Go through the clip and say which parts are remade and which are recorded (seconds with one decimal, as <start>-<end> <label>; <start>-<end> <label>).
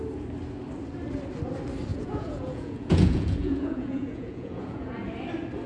0.0-1.9 recorded; 1.9-4.9 remade; 4.9-5.7 recorded